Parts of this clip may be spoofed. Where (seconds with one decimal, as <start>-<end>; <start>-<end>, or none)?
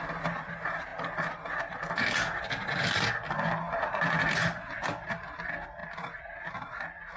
none